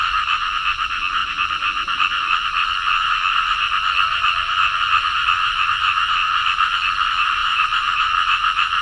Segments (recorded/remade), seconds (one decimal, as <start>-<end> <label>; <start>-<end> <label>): 0.0-7.4 recorded; 7.4-8.0 remade; 8.0-8.8 recorded